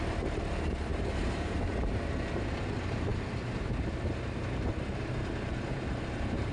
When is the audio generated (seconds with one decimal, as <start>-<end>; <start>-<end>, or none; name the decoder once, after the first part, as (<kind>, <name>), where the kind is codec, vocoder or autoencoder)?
0.0-6.5 (vocoder, BigVGAN v2)